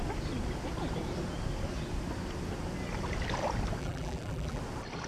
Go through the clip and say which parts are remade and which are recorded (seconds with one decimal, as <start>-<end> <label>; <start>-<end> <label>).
0.0-3.8 recorded; 3.8-4.6 remade; 4.6-5.1 recorded